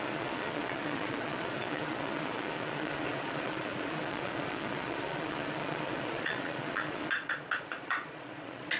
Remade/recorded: remade